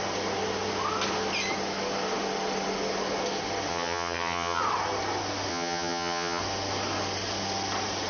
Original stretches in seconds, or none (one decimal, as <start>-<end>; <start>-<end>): 0.0-3.7; 4.6-5.5; 6.4-8.1